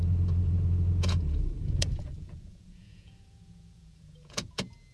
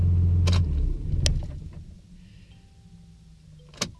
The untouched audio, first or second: second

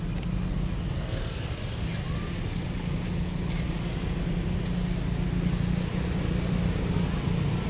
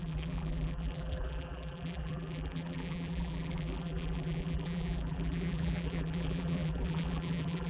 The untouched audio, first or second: first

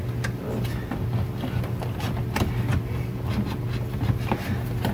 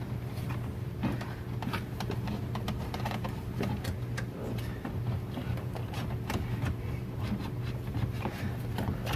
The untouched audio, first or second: first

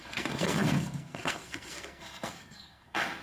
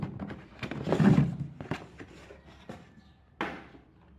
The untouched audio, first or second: second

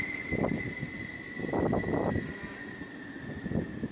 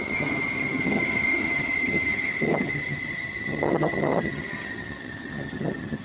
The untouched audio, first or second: first